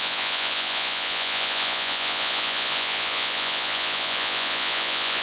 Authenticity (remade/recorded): remade